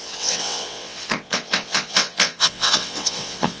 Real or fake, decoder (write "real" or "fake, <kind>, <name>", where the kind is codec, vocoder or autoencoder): fake, vocoder, WaveNeXt